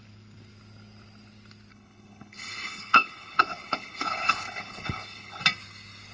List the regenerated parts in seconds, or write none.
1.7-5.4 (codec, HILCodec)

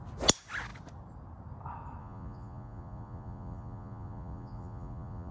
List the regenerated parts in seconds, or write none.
2.0-5.3 (vocoder, Vocos)

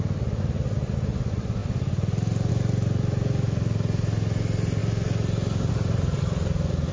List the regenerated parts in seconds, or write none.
none

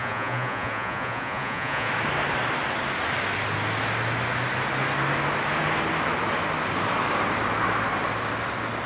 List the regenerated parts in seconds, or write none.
0.0-1.9 (vocoder, Vocos)

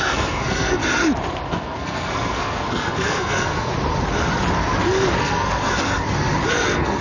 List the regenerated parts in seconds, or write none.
0.0-0.8 (codec, SNAC); 1.5-3.7; 5.2-5.8; 6.5-7.0

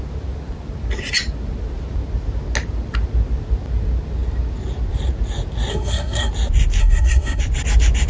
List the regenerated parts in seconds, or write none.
5.7-6.3 (codec, SNAC); 6.8-7.4